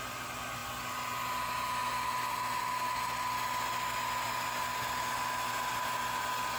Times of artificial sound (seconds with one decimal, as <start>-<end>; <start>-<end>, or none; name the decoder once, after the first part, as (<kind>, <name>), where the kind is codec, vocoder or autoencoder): none